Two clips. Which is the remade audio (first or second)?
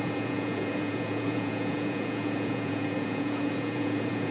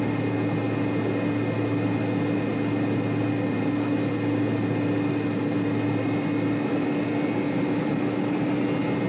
first